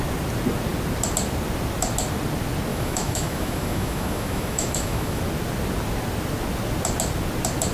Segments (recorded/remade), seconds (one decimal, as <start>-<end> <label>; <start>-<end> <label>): 0.0-2.7 recorded; 2.7-5.2 remade; 5.2-7.7 recorded